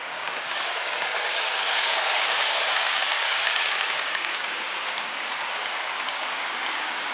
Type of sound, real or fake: fake